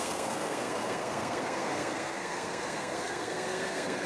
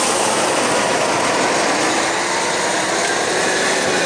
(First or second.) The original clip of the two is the second